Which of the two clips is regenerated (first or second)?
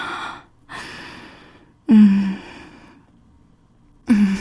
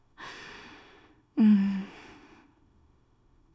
second